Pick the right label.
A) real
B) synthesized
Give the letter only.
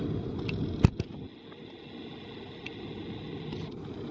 A